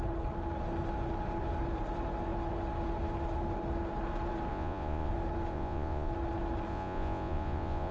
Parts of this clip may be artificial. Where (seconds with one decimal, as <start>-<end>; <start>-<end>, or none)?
4.5-5.1; 5.5-6.1; 6.7-7.9